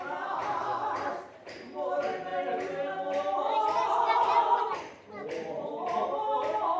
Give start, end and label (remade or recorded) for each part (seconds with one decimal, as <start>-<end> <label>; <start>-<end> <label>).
0.0-0.4 remade; 0.4-1.1 recorded; 1.1-6.8 remade